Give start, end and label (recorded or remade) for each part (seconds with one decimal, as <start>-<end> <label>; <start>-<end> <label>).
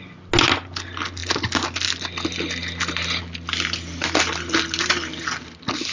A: 0.0-5.9 recorded